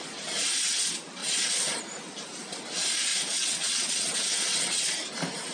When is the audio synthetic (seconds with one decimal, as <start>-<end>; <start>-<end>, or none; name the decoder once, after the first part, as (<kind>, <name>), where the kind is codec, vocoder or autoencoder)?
1.2-1.8 (vocoder, WaveNeXt); 3.1-4.8